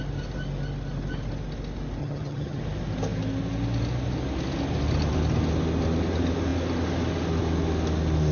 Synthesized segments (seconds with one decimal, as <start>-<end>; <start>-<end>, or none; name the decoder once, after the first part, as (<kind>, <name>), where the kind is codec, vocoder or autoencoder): 2.0-2.6 (vocoder, HiFi-GAN)